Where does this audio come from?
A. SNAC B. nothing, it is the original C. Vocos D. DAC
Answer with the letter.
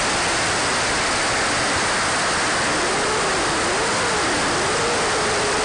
B